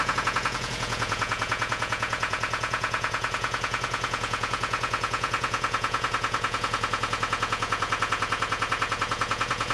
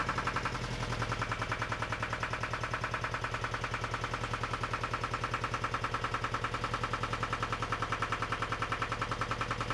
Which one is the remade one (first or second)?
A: first